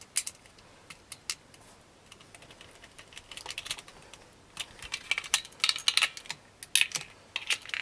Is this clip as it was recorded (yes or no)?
yes